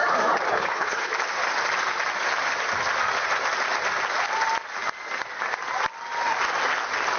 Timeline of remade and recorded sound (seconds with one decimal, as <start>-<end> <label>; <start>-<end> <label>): 0.0-0.5 recorded; 0.5-1.1 remade; 1.1-7.2 recorded